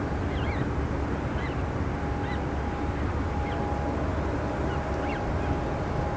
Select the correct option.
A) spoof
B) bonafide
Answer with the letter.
B